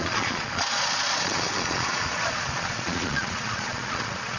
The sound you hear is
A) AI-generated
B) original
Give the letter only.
A